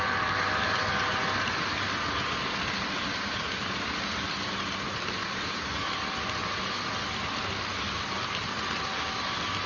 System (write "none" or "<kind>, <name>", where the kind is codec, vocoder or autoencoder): none